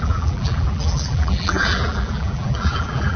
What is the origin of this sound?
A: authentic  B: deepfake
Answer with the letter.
B